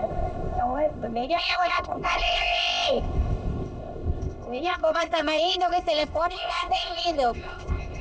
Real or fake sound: fake